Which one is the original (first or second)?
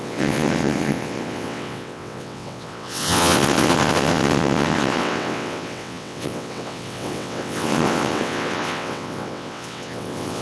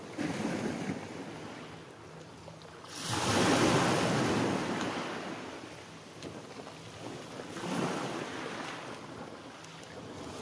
second